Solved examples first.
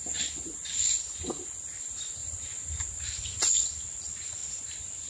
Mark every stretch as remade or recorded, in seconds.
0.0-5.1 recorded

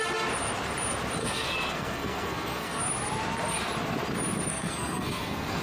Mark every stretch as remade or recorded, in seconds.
0.0-1.2 recorded; 1.2-2.8 remade; 2.8-4.5 recorded; 4.5-5.6 remade

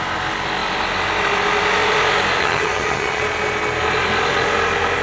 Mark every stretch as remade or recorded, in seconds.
0.0-2.4 recorded; 2.4-3.2 remade; 3.2-5.0 recorded

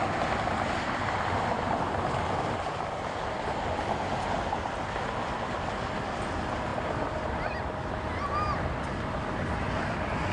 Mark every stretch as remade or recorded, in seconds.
0.0-10.3 recorded